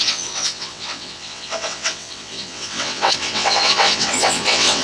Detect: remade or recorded remade